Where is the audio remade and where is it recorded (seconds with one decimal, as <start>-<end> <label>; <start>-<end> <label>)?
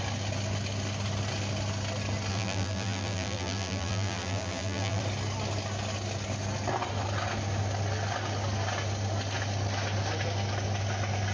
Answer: 0.0-2.3 recorded; 2.3-5.0 remade; 5.0-11.3 recorded